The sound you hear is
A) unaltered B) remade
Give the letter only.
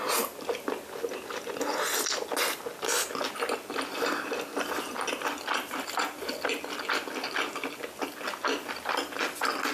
A